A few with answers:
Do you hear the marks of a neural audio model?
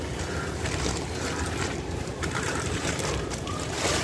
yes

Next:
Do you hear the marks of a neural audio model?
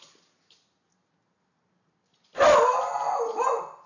no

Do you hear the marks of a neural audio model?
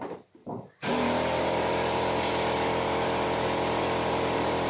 yes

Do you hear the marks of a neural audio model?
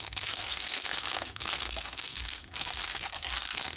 yes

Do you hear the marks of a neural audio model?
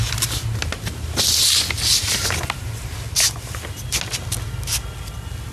no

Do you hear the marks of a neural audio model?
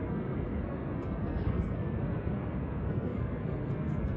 yes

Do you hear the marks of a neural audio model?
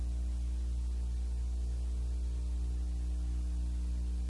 no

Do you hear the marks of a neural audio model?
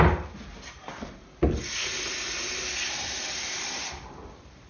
no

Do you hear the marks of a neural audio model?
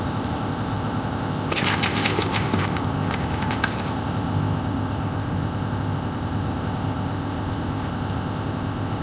yes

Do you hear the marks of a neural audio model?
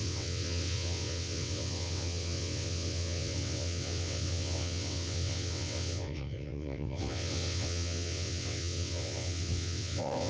yes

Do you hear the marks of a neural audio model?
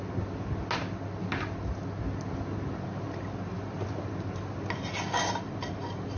no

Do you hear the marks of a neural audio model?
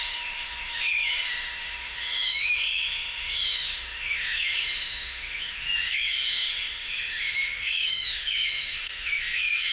yes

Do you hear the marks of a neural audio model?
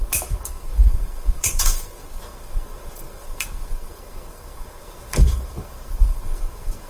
yes